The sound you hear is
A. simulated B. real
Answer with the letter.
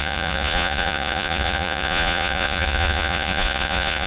A